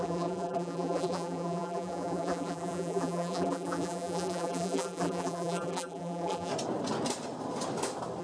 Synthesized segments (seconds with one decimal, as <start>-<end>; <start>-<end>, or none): 0.0-6.5